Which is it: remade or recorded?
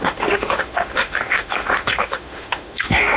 remade